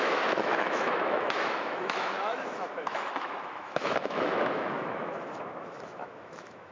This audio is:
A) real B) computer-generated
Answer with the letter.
B